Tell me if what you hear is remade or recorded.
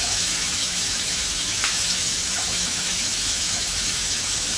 remade